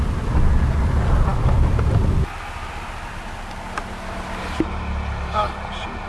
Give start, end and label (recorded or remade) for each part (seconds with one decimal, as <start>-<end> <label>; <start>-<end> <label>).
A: 0.0-6.1 recorded